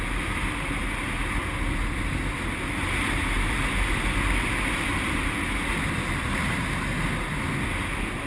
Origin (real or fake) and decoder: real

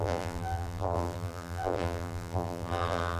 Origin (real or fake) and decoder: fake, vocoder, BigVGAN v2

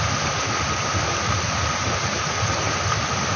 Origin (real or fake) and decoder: real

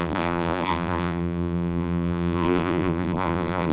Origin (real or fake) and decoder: fake, vocoder, BigVGAN v2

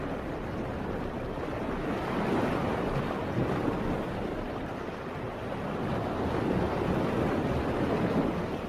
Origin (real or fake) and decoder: real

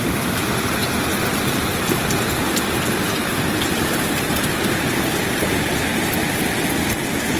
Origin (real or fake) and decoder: real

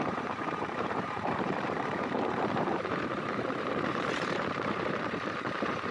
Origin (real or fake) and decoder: fake, vocoder, BigVGAN v2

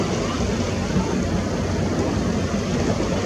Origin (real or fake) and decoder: real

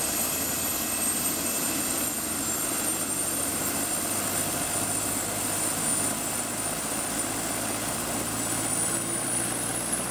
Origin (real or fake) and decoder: real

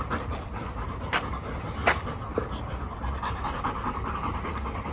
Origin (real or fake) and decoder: fake, vocoder, BigVGAN v2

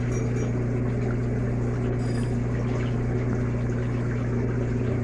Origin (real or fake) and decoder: real